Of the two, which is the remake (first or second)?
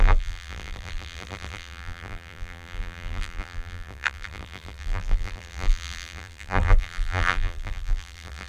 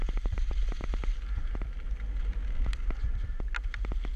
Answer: first